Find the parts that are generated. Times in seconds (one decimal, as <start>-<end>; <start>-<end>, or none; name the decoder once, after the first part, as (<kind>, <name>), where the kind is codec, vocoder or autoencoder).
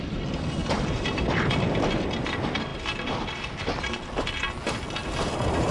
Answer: none